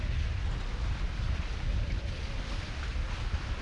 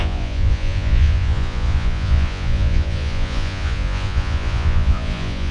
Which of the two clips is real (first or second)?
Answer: first